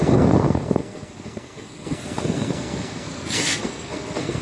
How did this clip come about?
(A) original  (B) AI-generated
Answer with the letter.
B